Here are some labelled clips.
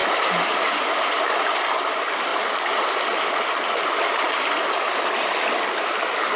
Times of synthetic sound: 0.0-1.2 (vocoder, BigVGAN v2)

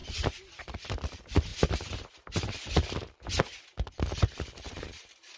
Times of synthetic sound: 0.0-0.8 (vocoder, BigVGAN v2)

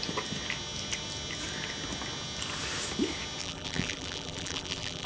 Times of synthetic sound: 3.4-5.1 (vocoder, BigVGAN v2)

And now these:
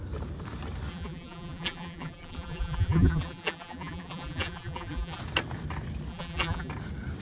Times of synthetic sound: 0.9-5.2 (vocoder, BigVGAN v2); 6.1-6.7

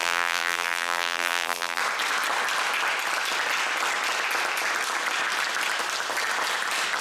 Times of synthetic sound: 0.0-1.8 (vocoder, BigVGAN v2)

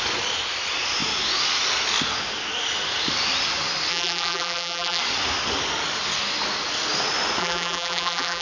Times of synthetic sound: 3.9-5.0 (vocoder, BigVGAN v2); 7.4-8.4

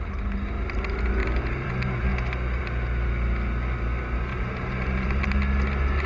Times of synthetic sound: 1.2-1.7 (vocoder, BigVGAN v2); 4.3-5.4